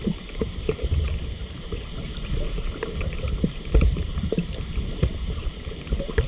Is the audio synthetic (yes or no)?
yes